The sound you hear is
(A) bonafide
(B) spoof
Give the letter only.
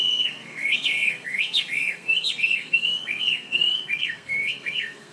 B